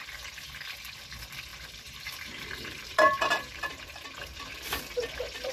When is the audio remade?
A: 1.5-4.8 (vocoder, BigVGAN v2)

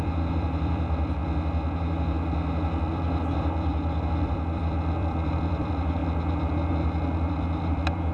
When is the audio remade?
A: 0.0-1.2 (vocoder, BigVGAN v2); 2.9-6.0; 6.7-8.1

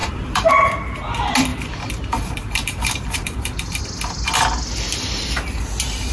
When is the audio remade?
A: 0.0-0.5 (vocoder, BigVGAN v2); 1.5-3.8